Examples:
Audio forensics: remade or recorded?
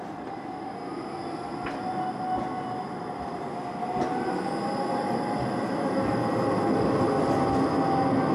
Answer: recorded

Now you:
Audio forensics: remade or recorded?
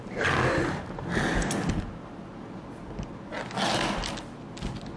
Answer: recorded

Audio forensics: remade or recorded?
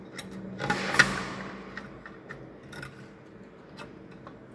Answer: recorded